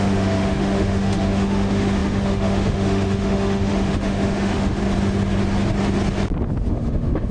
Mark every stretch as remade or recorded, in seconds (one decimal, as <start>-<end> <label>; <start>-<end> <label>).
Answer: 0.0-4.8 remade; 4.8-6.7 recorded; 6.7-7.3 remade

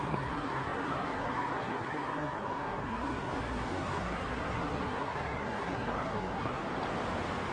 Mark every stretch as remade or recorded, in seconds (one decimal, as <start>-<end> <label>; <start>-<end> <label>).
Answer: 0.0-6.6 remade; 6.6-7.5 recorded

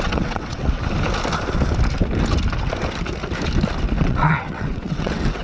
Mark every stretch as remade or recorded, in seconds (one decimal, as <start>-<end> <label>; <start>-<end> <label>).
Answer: 0.0-0.8 remade; 0.8-4.0 recorded; 4.0-5.4 remade

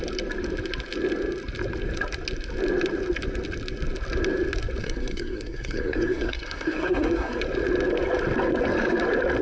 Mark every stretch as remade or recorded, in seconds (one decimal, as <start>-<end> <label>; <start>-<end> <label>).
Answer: 0.0-4.8 recorded; 4.8-7.4 remade; 7.4-9.4 recorded